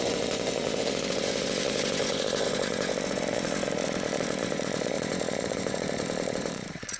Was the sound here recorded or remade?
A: remade